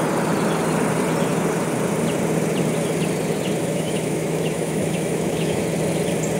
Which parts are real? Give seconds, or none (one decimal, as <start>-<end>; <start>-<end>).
0.0-3.6; 5.6-6.4